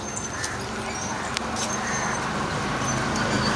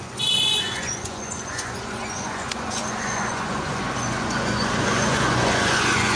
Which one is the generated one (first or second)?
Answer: second